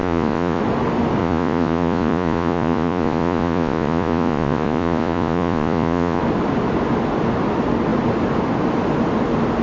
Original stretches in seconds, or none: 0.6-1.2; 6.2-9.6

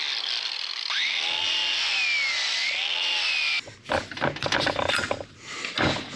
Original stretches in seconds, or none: 0.0-6.2